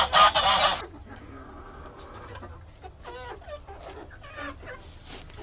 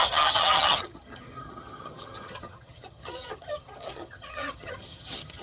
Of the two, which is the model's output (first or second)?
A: second